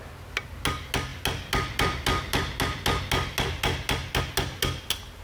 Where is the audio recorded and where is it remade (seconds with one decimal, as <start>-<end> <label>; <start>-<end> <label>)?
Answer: 0.0-5.2 recorded

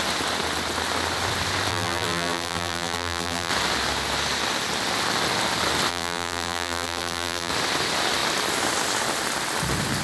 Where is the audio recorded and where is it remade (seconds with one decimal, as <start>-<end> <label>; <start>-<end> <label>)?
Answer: 0.0-1.7 recorded; 1.7-3.5 remade; 3.5-5.9 recorded; 5.9-7.5 remade; 7.5-10.0 recorded